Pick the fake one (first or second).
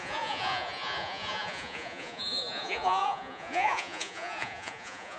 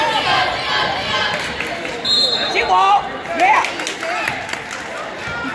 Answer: first